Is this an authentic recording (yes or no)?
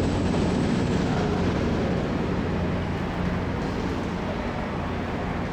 yes